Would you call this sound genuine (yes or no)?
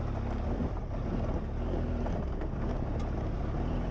yes